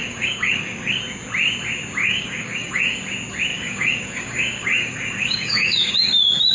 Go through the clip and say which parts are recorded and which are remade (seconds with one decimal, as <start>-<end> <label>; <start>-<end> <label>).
0.0-1.0 remade; 1.0-2.0 recorded; 2.0-3.0 remade; 3.0-3.5 recorded; 3.5-5.9 remade; 5.9-6.5 recorded